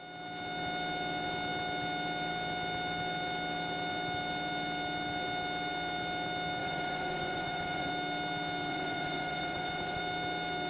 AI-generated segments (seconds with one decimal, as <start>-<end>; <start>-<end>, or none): 6.6-7.9; 8.7-10.0